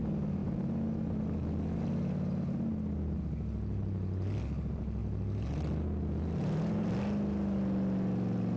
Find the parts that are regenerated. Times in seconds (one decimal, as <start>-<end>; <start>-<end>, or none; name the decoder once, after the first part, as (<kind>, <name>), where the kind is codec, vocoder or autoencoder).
none